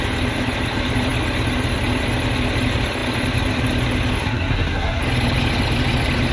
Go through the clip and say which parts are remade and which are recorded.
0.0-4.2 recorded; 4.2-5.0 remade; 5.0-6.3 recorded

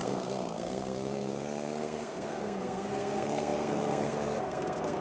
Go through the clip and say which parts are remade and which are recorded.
0.0-5.0 remade

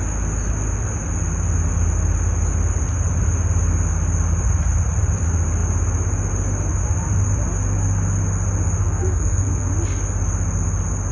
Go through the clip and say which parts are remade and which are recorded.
0.0-8.8 recorded; 8.8-9.7 remade; 9.7-11.1 recorded

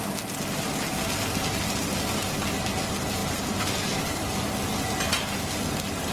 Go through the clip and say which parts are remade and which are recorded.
0.0-6.1 recorded

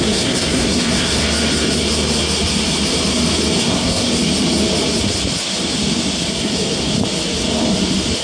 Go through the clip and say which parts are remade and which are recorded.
0.0-1.2 remade; 1.2-3.6 recorded; 3.6-4.1 remade; 4.1-6.3 recorded; 6.3-6.9 remade; 6.9-8.2 recorded

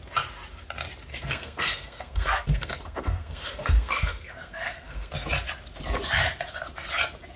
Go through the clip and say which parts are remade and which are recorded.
0.0-1.1 recorded; 1.1-5.1 remade; 5.1-7.4 recorded

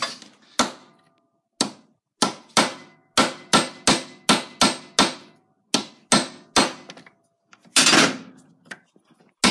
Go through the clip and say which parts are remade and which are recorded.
0.0-9.5 recorded

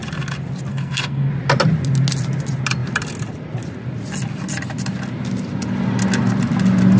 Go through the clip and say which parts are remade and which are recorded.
0.0-0.7 recorded; 0.7-1.3 remade; 1.3-7.0 recorded